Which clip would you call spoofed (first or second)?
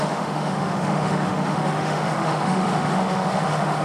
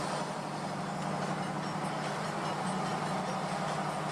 first